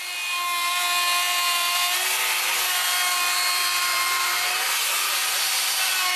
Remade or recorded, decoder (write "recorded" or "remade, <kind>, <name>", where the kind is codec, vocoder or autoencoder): recorded